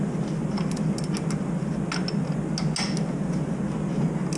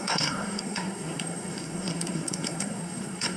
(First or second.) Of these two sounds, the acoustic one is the first